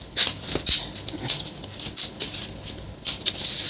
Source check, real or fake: real